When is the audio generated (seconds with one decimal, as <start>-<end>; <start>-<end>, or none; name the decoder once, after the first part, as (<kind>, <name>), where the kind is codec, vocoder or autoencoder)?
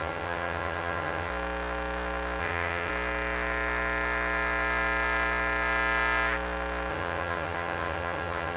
0.0-1.3 (vocoder, HiFi-GAN); 2.4-2.9; 6.9-8.6